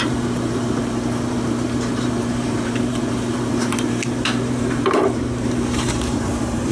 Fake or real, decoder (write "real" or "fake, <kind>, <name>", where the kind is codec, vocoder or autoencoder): fake, vocoder, BigVGAN v2